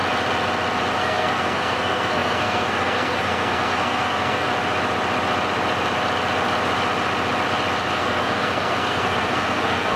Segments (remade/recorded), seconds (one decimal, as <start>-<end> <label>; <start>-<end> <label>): 0.0-0.9 recorded; 0.9-4.5 remade; 4.5-7.9 recorded; 7.9-10.0 remade